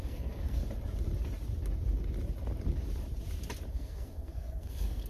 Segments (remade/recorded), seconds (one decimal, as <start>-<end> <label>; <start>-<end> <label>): 0.0-0.6 remade; 0.6-3.7 recorded; 3.7-5.1 remade